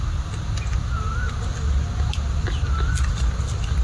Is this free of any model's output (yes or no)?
yes